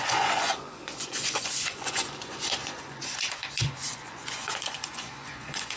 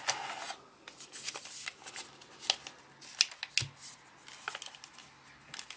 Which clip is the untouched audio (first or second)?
second